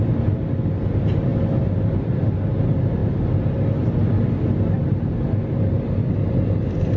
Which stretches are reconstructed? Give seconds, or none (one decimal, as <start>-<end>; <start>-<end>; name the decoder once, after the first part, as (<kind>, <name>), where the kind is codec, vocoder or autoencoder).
none